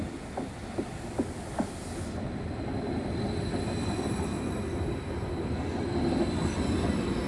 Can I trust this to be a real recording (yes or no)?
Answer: yes